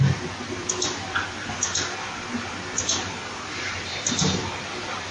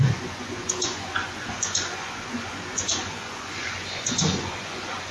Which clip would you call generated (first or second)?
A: second